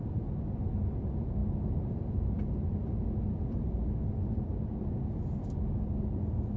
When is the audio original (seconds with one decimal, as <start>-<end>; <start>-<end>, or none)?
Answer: 0.0-6.6